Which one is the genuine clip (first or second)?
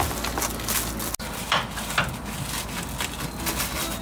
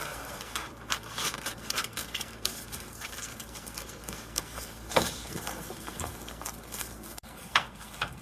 first